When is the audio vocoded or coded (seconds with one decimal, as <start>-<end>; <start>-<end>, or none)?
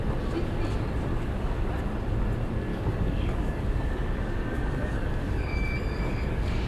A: 1.1-1.7; 2.7-6.7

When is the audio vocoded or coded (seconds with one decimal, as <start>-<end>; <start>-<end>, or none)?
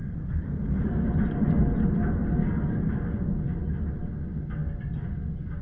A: 0.0-1.0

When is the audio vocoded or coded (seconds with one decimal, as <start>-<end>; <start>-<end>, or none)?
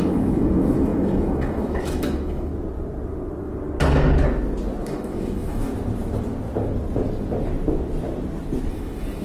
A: 0.0-2.5; 4.8-5.7; 8.7-9.2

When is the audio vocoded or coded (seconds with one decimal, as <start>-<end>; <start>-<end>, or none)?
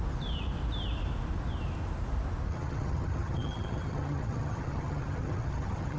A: 2.5-6.0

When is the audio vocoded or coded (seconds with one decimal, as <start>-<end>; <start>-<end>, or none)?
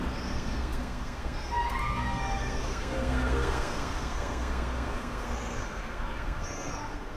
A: 0.0-7.2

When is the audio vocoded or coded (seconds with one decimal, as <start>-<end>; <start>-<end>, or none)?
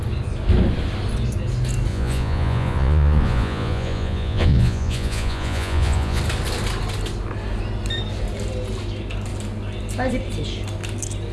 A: 1.9-6.2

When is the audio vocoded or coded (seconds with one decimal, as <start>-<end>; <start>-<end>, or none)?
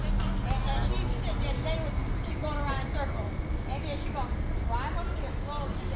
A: none